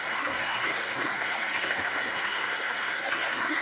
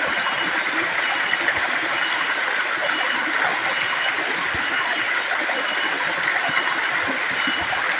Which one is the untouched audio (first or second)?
second